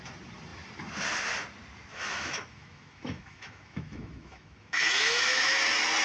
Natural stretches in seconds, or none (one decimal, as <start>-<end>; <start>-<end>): 0.0-1.9; 5.5-6.0